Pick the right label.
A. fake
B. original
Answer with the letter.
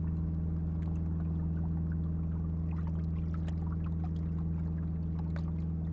B